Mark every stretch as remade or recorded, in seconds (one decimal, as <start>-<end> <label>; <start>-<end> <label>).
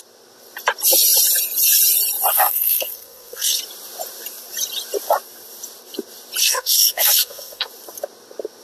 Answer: 0.0-2.3 recorded; 2.3-3.6 remade; 3.6-6.4 recorded; 6.4-7.7 remade; 7.7-8.6 recorded